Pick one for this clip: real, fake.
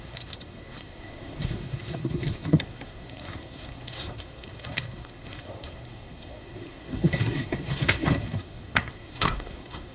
fake